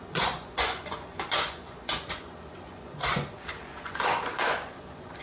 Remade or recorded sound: remade